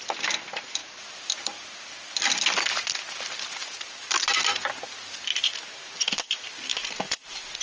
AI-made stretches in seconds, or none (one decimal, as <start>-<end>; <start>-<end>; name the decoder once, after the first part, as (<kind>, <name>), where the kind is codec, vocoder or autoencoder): 6.7-7.6 (vocoder, Vocos)